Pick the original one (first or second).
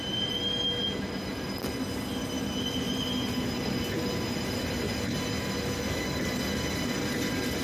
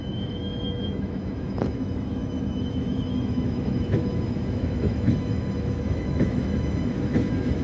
first